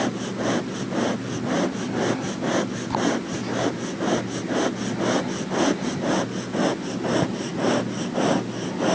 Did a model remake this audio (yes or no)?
no